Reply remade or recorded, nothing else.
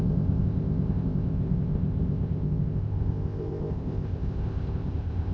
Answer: remade